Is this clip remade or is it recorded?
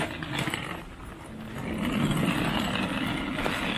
recorded